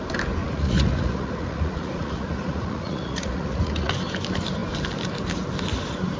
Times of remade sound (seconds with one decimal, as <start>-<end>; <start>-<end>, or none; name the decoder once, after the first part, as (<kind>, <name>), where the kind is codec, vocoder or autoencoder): 0.4-3.9 (vocoder, Vocos)